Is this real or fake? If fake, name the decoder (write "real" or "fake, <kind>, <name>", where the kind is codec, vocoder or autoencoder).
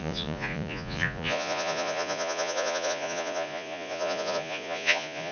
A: fake, vocoder, Vocos